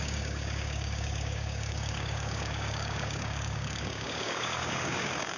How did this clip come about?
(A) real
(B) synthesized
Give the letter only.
B